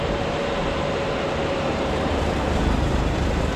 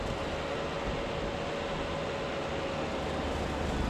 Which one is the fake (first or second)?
first